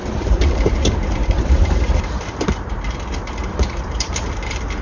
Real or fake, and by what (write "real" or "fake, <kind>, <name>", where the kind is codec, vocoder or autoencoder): fake, vocoder, BigVGAN v2